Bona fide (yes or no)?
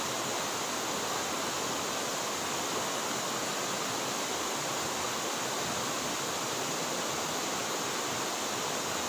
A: yes